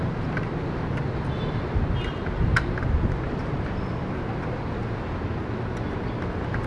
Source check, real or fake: real